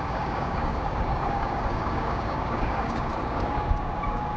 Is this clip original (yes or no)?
no